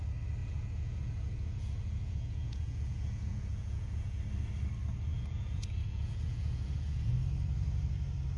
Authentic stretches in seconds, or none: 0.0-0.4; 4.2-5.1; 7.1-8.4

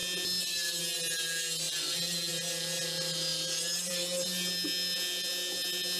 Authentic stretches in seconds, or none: 0.0-6.0

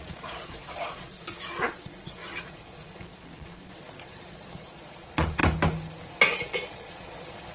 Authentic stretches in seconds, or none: 5.4-6.4

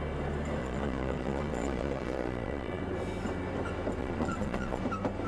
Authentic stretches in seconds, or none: 0.0-0.6; 2.8-4.0; 4.8-5.3